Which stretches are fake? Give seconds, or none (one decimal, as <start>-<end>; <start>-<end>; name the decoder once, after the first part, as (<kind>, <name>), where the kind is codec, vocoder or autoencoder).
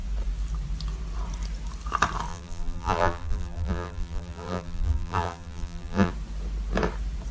2.3-6.1 (vocoder, BigVGAN v2)